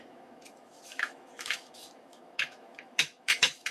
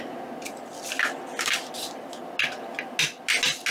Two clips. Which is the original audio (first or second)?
second